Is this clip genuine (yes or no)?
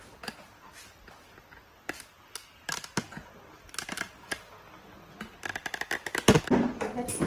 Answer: yes